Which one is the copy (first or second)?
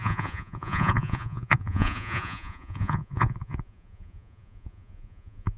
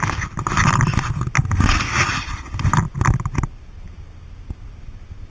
first